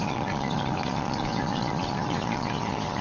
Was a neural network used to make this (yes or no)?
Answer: yes